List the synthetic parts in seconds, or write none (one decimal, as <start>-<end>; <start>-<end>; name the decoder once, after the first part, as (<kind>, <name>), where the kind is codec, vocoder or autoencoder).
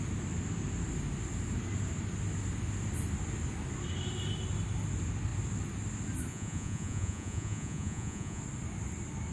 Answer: 6.3-8.4 (vocoder, Vocos)